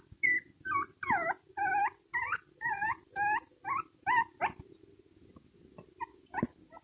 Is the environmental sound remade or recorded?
recorded